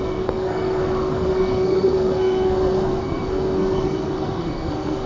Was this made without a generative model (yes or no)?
no